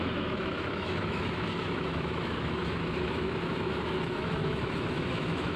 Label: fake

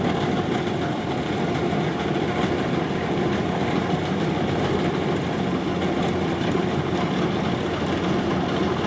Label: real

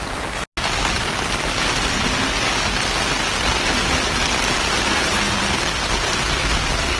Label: real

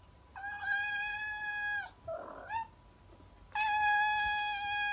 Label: real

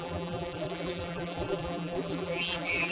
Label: fake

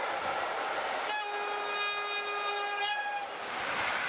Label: real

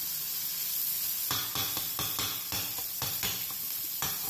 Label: real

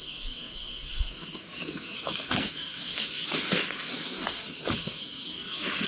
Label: fake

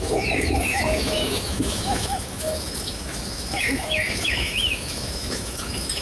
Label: fake